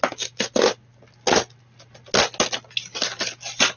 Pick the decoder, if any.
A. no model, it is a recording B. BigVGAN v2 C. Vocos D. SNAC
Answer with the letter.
A